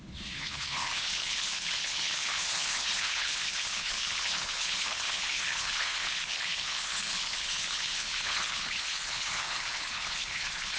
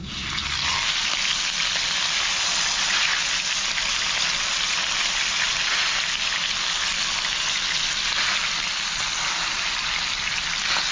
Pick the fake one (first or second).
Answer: first